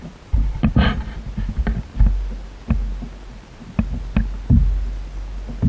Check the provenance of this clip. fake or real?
real